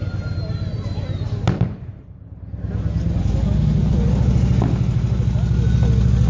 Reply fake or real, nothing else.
real